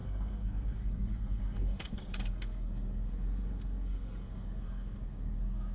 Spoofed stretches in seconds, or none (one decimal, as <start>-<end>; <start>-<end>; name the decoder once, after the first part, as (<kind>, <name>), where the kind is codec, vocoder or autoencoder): 0.0-5.7 (codec, SNAC)